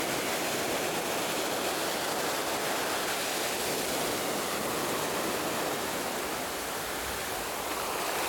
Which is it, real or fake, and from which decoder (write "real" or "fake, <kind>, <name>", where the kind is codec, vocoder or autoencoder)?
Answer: real